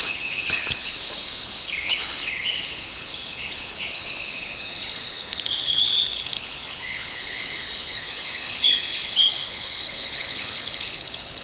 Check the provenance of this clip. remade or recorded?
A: remade